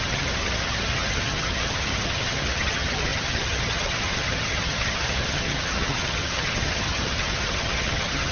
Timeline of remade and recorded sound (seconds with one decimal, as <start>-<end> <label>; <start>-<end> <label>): 0.0-8.3 remade